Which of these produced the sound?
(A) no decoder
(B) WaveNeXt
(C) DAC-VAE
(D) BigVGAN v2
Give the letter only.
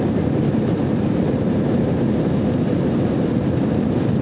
D